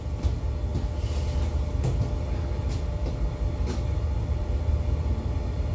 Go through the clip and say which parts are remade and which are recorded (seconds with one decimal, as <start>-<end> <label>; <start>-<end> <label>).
0.0-5.7 recorded